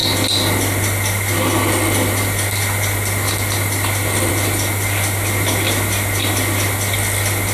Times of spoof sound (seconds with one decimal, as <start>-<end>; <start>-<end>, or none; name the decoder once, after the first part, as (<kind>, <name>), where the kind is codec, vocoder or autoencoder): none